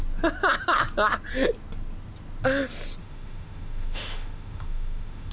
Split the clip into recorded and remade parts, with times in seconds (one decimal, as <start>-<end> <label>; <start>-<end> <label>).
0.0-3.0 recorded; 3.0-5.3 remade